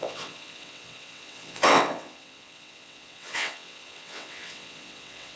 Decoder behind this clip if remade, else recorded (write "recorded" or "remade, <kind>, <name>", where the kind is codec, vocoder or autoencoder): remade, vocoder, WaveNeXt